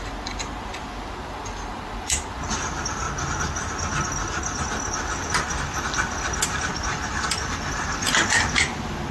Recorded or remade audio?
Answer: recorded